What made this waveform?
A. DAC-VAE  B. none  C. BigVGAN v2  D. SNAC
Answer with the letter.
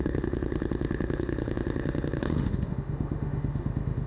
A